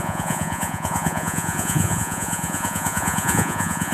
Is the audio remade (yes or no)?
yes